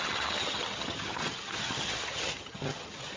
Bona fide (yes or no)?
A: no